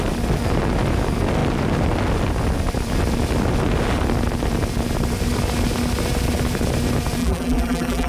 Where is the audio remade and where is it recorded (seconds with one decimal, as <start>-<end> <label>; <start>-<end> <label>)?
0.0-7.2 recorded; 7.2-8.1 remade